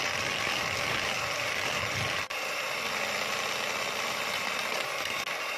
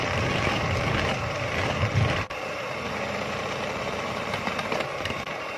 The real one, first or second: first